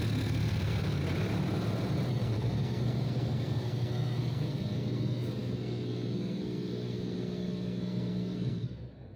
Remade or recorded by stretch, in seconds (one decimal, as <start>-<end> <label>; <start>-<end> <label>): 0.0-1.0 remade; 1.0-2.1 recorded; 2.1-9.2 remade